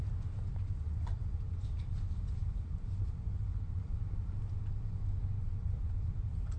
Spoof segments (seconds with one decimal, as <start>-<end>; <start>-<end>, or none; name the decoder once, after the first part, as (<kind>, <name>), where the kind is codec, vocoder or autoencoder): 1.2-1.7 (vocoder, BigVGAN v2); 2.4-3.1; 5.6-6.1